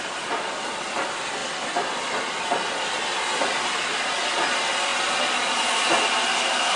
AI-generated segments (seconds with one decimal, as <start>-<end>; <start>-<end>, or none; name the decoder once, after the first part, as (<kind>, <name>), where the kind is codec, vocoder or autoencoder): none